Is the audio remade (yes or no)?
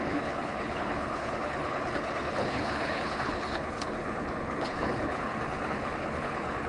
yes